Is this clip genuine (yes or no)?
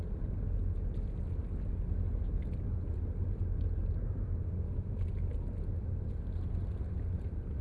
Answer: yes